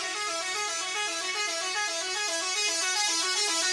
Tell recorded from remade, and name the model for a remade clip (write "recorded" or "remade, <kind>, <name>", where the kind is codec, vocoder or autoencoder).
recorded